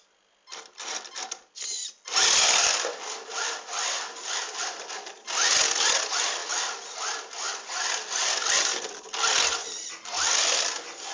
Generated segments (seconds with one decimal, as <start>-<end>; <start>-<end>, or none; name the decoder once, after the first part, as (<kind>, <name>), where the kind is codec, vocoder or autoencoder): none

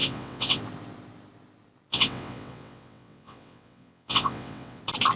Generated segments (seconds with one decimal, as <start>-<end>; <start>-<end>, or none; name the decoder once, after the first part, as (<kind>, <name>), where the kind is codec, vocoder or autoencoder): 0.0-0.6 (vocoder, WaveNeXt); 1.9-4.8